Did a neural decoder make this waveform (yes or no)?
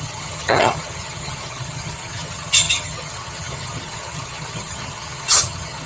yes